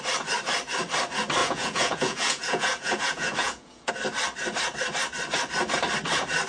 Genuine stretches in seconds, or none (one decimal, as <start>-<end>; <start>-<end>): 0.0-1.4; 3.9-6.5